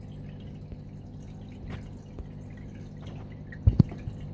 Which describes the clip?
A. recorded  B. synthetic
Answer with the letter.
A